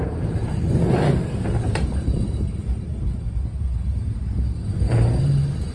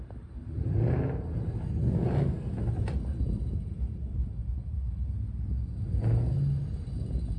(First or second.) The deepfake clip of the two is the first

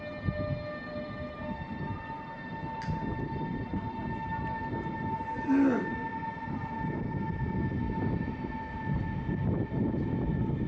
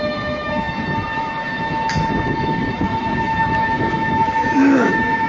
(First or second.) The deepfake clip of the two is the second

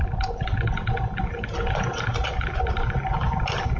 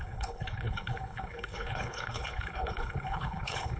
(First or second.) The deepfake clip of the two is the second